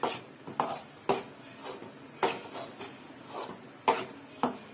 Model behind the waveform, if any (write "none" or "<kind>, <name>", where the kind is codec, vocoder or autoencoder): none